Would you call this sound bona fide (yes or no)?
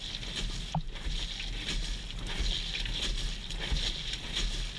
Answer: yes